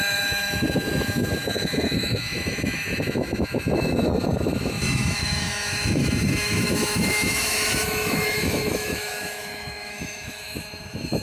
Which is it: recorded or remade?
remade